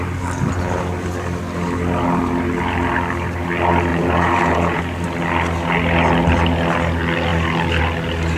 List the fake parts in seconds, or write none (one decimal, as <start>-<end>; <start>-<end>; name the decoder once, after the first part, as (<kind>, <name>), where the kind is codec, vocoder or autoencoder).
3.9-4.8 (vocoder, Vocos)